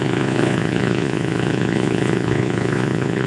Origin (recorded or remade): remade